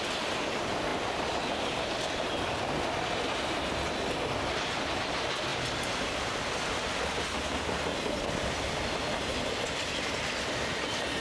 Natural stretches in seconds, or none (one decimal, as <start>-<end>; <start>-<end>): 0.0-0.9; 2.7-7.9; 10.0-11.2

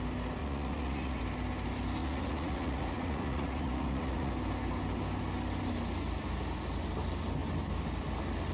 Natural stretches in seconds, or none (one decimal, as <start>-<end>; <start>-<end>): 0.0-0.4; 1.2-2.0; 4.3-8.5

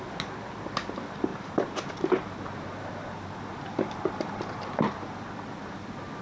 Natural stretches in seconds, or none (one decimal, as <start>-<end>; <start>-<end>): 0.0-1.3; 5.0-6.2